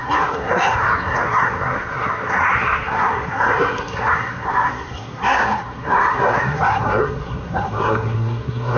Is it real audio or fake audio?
fake